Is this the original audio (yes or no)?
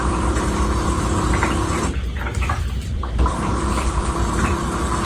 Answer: no